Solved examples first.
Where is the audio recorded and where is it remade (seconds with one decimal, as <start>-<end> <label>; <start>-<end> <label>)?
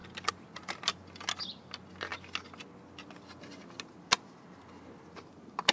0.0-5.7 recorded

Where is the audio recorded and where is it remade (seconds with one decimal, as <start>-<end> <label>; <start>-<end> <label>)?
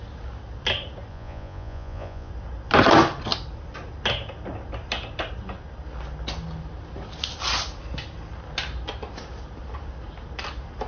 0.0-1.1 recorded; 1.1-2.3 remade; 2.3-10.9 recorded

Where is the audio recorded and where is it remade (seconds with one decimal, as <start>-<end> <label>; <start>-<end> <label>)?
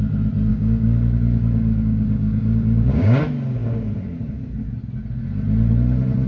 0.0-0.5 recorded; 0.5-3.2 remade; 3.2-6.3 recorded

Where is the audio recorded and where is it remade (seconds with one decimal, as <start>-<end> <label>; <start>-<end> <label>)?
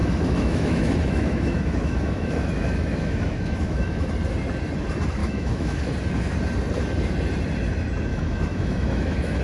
0.0-4.1 remade; 4.1-5.2 recorded; 5.2-5.9 remade; 5.9-8.1 recorded; 8.1-9.4 remade